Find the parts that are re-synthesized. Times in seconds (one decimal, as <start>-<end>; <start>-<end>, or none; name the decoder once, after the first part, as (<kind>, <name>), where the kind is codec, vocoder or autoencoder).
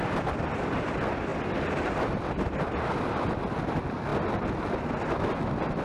none